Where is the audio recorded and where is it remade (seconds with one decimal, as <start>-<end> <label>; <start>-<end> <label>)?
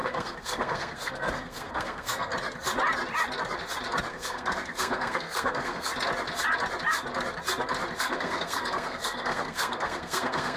0.0-2.3 remade; 2.3-4.1 recorded; 4.1-5.9 remade; 5.9-8.0 recorded; 8.0-10.6 remade